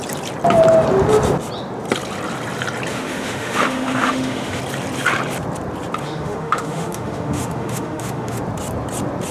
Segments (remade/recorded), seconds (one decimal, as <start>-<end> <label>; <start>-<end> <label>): 0.0-2.9 recorded; 2.9-4.6 remade; 4.6-6.0 recorded; 6.0-8.4 remade; 8.4-9.3 recorded